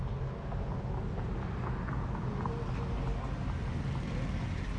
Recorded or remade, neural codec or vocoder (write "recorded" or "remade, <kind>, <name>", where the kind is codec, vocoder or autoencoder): recorded